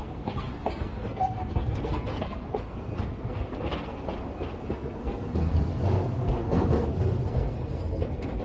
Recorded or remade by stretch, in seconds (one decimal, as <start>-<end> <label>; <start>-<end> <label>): 0.0-4.1 remade; 4.1-4.6 recorded; 4.6-8.4 remade